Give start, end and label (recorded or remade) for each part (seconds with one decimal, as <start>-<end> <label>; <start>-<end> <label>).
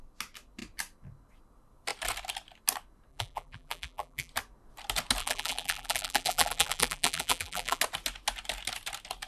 0.0-3.1 recorded; 3.1-4.3 remade; 4.3-5.2 recorded; 5.2-7.8 remade; 7.8-9.3 recorded